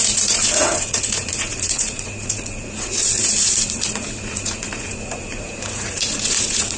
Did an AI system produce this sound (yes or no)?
yes